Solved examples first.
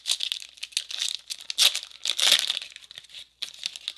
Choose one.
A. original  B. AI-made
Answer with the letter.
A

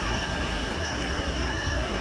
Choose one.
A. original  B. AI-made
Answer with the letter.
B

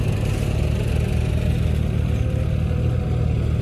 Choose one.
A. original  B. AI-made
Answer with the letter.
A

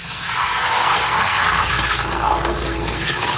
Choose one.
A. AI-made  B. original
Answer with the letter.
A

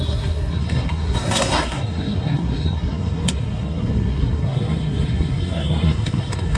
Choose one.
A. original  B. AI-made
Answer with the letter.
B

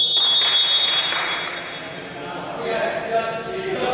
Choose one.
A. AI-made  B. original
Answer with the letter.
B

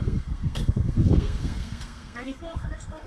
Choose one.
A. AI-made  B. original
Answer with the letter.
A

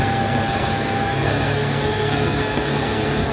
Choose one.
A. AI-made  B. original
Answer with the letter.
A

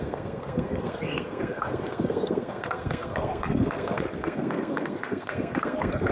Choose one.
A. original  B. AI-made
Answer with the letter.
B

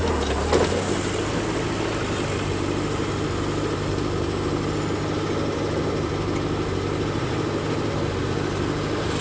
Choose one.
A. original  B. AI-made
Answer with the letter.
A